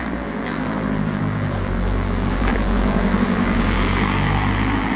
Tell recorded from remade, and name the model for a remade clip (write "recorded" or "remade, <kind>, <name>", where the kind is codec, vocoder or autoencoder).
remade, vocoder, BigVGAN v2